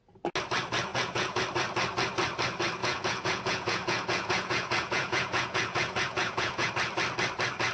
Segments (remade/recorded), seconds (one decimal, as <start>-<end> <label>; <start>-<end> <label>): 0.0-0.9 recorded; 0.9-1.4 remade; 1.4-2.8 recorded; 2.8-6.7 remade; 6.7-7.7 recorded